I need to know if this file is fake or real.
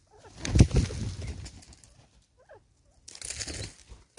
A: real